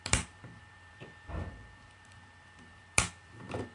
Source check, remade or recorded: remade